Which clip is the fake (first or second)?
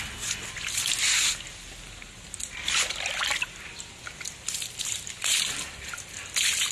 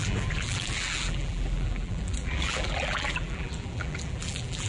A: second